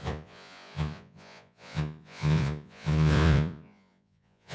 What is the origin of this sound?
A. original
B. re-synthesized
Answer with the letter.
B